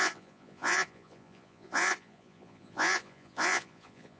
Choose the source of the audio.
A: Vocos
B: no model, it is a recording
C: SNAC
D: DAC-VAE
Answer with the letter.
A